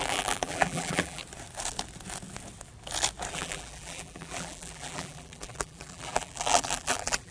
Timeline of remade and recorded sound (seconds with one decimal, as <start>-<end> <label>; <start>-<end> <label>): 0.0-1.2 remade; 1.2-3.3 recorded; 3.3-7.3 remade